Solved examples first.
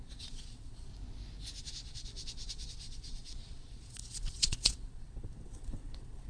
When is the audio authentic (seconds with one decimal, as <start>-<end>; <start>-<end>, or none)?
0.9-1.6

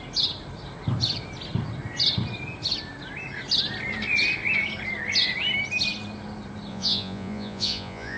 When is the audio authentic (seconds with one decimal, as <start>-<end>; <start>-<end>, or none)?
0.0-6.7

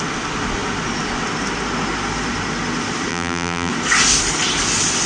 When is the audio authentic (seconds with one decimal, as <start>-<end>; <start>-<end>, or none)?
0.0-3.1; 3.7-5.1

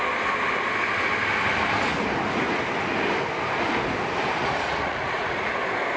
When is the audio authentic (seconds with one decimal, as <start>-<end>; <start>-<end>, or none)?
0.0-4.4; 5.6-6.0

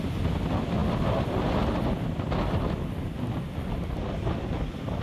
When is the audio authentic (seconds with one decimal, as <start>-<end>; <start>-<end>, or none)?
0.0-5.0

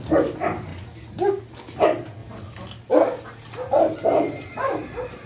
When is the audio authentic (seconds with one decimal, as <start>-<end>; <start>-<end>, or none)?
0.0-5.3